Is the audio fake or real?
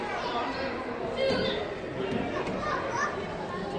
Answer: real